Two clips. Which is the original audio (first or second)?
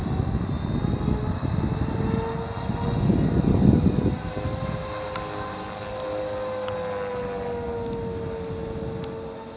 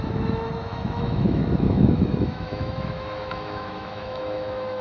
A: first